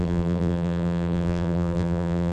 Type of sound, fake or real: fake